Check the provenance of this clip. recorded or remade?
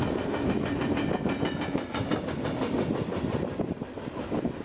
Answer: recorded